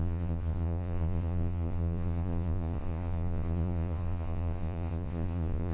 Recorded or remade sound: remade